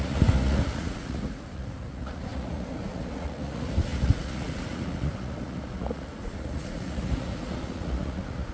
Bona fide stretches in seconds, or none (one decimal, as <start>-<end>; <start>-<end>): none